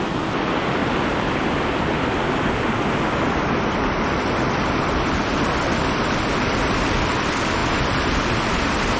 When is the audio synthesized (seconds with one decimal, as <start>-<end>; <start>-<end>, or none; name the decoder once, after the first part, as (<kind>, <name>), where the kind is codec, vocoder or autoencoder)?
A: none